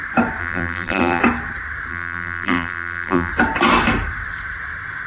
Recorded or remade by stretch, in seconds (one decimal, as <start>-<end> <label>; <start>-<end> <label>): 0.0-0.4 recorded; 0.4-1.2 remade; 1.2-1.9 recorded; 1.9-3.3 remade; 3.3-5.1 recorded